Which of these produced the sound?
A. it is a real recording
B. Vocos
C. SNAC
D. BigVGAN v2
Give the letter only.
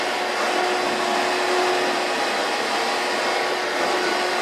A